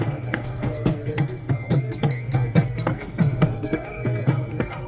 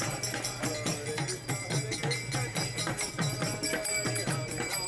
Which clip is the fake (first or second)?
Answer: first